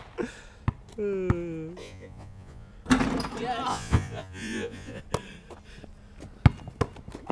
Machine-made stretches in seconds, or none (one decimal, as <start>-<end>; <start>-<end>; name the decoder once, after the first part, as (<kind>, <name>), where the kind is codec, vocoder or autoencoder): 1.8-2.7 (vocoder, Vocos); 3.7-5.0